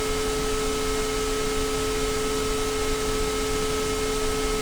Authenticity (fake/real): real